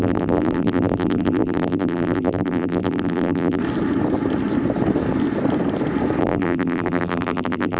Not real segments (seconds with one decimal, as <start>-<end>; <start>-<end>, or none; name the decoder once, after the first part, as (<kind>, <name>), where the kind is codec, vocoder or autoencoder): 0.0-3.6 (vocoder, BigVGAN v2); 6.2-7.8

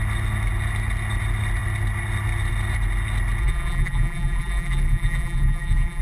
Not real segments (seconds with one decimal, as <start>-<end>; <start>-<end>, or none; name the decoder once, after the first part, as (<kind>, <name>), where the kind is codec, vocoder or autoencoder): 3.4-6.0 (vocoder, BigVGAN v2)

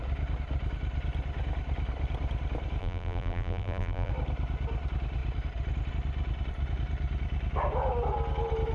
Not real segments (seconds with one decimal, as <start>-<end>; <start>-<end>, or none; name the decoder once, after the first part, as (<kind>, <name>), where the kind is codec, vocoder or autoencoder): 2.8-4.1 (vocoder, BigVGAN v2)

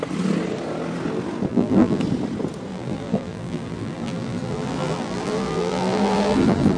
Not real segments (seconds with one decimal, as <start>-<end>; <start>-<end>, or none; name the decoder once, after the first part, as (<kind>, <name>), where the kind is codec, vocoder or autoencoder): 1.5-2.0 (vocoder, BigVGAN v2); 2.7-6.8

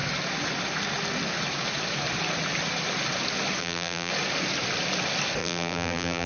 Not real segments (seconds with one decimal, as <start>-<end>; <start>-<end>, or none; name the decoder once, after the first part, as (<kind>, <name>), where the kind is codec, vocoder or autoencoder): 3.6-4.1 (vocoder, BigVGAN v2); 5.4-6.3

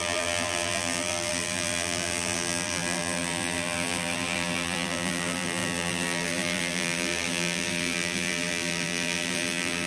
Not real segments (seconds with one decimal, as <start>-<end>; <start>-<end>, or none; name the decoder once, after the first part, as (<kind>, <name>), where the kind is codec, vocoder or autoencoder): 0.0-9.9 (vocoder, BigVGAN v2)

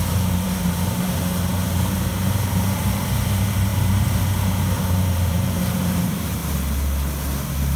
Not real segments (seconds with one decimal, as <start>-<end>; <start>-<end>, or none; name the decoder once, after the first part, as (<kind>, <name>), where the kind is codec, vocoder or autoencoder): 0.0-6.4 (vocoder, BigVGAN v2)